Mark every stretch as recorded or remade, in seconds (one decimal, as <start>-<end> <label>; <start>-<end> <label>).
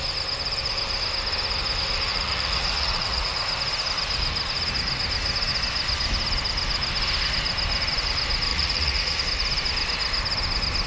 0.0-2.1 recorded; 2.1-3.3 remade; 3.3-8.5 recorded; 8.5-9.2 remade; 9.2-10.9 recorded